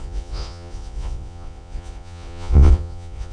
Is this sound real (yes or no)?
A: no